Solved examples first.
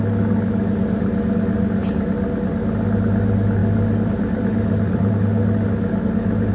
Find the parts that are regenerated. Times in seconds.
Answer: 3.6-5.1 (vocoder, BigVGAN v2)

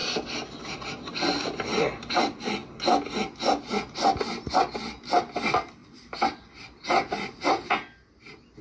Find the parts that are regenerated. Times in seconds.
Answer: 0.0-0.6 (vocoder, BigVGAN v2); 5.8-6.8

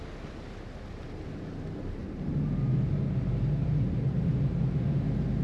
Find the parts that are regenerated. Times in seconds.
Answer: none

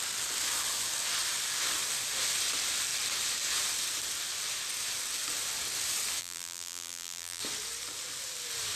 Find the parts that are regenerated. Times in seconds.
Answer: 6.2-7.4 (vocoder, BigVGAN v2)

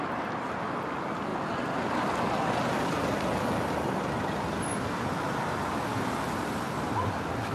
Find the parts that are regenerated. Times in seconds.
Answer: none

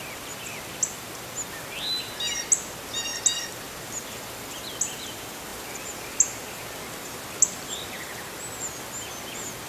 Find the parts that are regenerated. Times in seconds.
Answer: 5.5-8.4 (vocoder, BigVGAN v2)

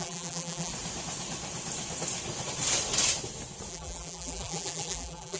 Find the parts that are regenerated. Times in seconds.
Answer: 0.0-0.7 (vocoder, BigVGAN v2); 3.7-5.4

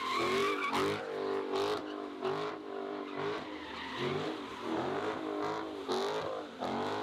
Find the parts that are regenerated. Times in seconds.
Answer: 0.4-1.0 (vocoder, BigVGAN v2); 1.8-3.7